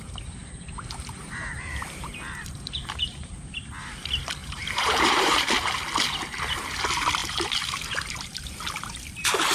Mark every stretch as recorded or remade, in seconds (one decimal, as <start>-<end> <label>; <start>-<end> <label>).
0.0-0.4 recorded; 0.4-3.3 remade; 3.3-4.4 recorded; 4.4-5.5 remade; 5.5-7.2 recorded; 7.2-9.0 remade; 9.0-9.5 recorded